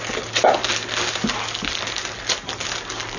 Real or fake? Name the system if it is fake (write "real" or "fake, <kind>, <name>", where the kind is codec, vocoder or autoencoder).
real